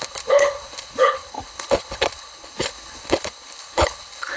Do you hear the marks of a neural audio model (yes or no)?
yes